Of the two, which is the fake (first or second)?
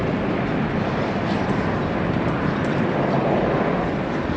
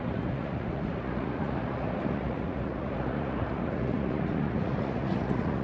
second